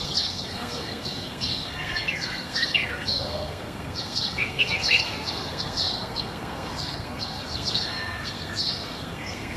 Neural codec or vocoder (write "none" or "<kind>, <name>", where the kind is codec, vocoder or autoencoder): codec, SNAC